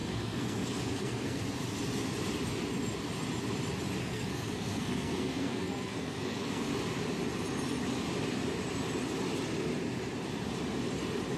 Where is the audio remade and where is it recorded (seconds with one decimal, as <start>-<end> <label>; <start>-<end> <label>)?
0.0-1.4 remade; 1.4-4.0 recorded; 4.0-6.7 remade; 6.7-11.4 recorded